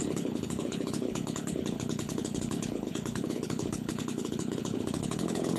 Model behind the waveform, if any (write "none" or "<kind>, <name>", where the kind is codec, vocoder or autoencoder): codec, HILCodec